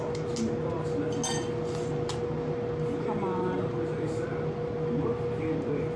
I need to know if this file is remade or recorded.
recorded